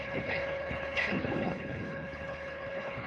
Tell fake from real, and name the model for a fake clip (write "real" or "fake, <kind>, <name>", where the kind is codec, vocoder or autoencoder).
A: fake, codec, HILCodec